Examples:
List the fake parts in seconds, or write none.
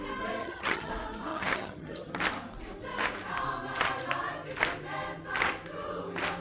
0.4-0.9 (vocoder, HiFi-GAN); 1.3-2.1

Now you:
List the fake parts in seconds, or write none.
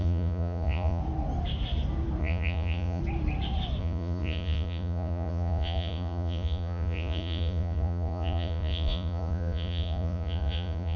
0.0-1.0 (vocoder, Vocos); 2.2-3.0; 3.8-11.0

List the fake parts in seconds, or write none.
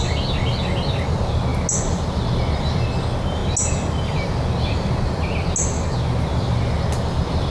none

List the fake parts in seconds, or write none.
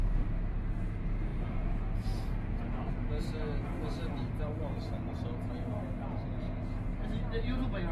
none